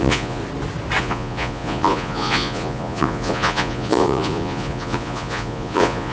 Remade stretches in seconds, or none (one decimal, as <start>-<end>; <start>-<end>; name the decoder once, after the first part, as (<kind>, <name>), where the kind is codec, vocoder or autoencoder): 0.0-0.4 (vocoder, Vocos); 1.0-6.1